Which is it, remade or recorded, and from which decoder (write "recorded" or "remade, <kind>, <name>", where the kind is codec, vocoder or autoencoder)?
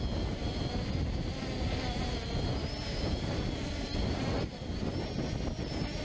recorded